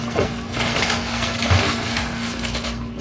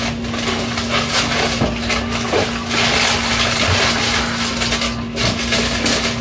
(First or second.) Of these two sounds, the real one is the second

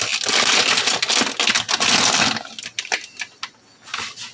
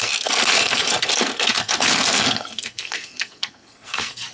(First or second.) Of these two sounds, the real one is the first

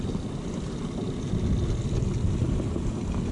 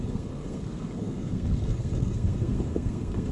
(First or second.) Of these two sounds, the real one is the first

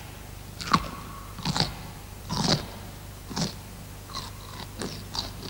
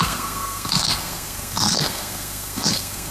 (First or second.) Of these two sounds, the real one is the first